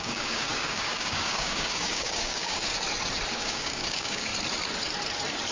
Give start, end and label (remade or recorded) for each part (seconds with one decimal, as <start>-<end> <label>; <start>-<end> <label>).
0.0-2.7 remade; 2.7-3.3 recorded; 3.3-4.3 remade; 4.3-5.5 recorded